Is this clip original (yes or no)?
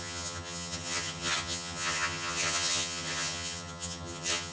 no